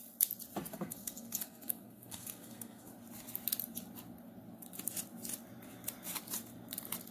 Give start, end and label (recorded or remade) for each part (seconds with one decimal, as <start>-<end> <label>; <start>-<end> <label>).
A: 0.0-0.7 recorded; 0.7-2.9 remade; 2.9-7.1 recorded